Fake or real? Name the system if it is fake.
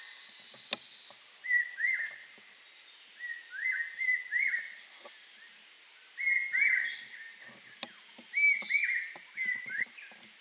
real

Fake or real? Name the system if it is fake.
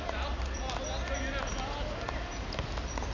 real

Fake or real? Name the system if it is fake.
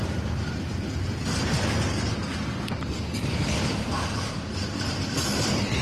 real